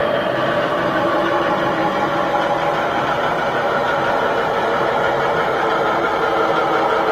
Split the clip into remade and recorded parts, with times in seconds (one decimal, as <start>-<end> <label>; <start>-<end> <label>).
0.0-1.8 remade; 1.8-3.3 recorded; 3.3-6.1 remade; 6.1-7.1 recorded